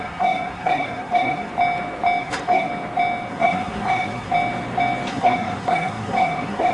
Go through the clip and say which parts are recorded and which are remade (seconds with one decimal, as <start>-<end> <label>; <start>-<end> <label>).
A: 0.0-1.5 remade; 1.5-2.2 recorded; 2.2-2.7 remade; 2.7-3.3 recorded; 3.3-4.3 remade; 4.3-5.1 recorded; 5.1-6.7 remade